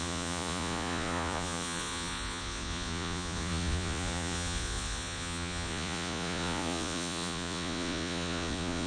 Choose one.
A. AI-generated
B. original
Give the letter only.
A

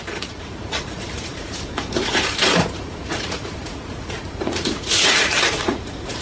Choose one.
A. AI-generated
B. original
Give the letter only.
A